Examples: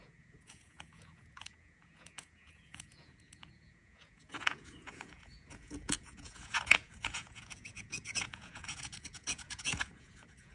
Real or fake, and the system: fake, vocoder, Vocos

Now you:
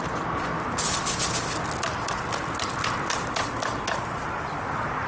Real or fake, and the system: real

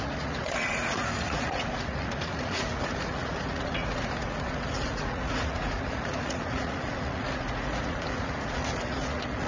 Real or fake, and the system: fake, vocoder, Vocos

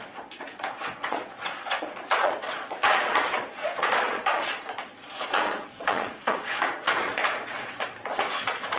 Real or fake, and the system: fake, vocoder, Vocos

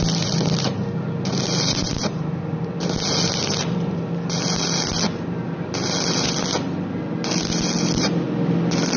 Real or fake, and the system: real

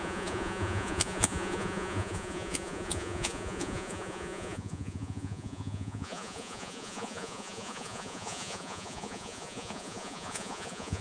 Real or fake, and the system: fake, vocoder, Vocos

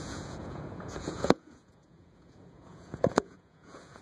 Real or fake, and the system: fake, vocoder, Vocos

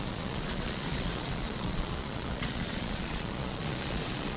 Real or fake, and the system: fake, vocoder, Vocos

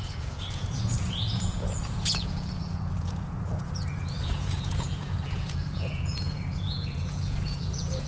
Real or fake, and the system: fake, vocoder, Vocos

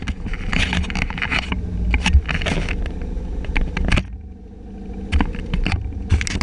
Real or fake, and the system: real